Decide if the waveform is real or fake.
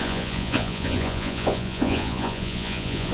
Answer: fake